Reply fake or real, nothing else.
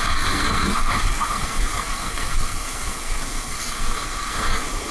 fake